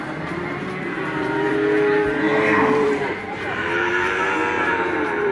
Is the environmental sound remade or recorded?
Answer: remade